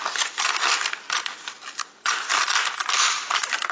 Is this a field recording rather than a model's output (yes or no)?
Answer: yes